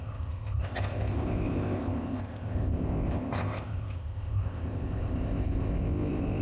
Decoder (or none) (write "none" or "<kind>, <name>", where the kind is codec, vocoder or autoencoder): codec, ZipCodec